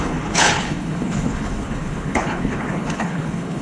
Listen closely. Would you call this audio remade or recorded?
remade